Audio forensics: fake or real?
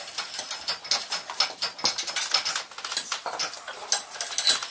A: real